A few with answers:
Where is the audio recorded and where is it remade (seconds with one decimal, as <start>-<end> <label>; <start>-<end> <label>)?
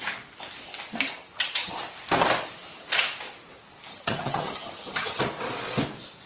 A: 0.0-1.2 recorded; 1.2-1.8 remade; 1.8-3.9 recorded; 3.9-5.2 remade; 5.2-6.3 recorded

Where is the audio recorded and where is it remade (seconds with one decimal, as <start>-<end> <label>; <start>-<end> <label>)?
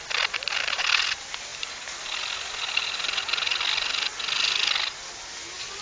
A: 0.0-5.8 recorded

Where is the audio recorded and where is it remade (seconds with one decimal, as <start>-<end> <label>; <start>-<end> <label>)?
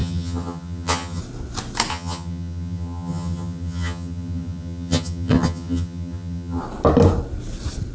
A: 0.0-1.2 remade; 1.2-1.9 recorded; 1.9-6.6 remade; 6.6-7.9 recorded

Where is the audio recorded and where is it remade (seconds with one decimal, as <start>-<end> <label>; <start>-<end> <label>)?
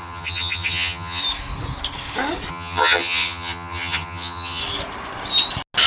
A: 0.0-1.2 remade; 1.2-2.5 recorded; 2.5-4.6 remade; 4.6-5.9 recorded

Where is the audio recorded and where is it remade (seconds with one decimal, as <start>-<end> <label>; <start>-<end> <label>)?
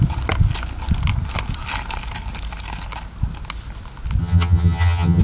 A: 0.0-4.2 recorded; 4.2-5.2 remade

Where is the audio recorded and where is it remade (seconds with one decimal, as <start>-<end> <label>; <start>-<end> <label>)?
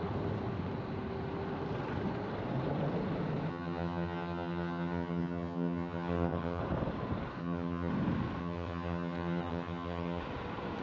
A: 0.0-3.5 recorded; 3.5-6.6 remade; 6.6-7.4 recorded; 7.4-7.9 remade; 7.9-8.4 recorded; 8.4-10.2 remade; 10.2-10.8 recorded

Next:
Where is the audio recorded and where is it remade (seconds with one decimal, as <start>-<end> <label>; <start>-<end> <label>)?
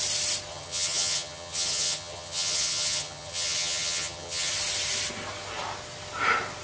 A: 0.0-0.5 recorded; 0.5-4.5 remade; 4.5-6.6 recorded